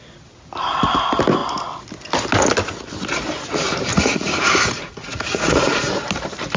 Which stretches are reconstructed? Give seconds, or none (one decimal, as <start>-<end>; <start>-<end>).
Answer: 3.9-5.9